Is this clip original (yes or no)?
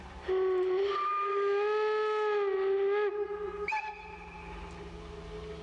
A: yes